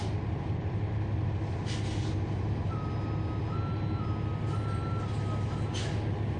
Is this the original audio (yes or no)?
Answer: yes